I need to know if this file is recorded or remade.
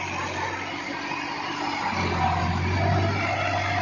recorded